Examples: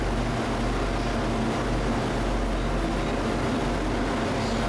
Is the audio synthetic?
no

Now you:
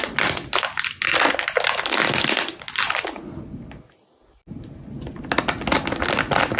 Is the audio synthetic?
no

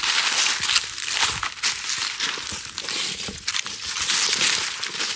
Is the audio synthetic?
no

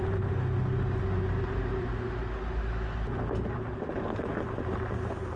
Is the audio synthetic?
no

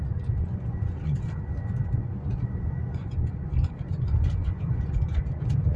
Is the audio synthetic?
yes